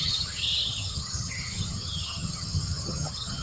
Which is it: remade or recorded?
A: remade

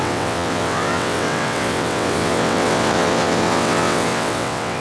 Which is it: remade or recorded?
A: remade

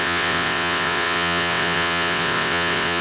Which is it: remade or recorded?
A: remade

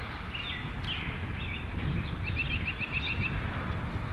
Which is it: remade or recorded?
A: recorded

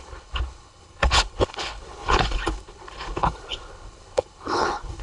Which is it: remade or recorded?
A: remade